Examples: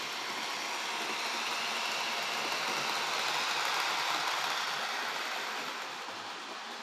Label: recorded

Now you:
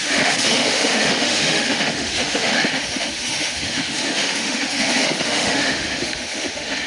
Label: remade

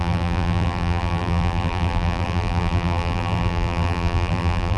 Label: remade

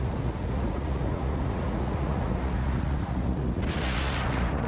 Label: remade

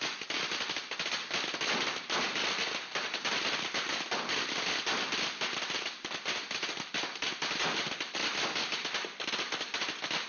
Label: recorded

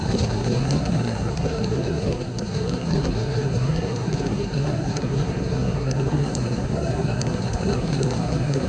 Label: remade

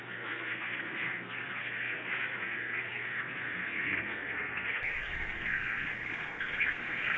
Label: remade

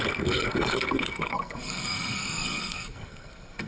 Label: remade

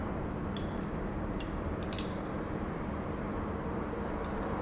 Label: remade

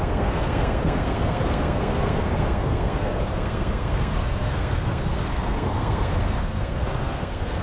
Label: remade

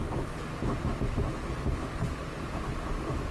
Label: recorded